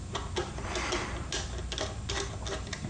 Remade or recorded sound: recorded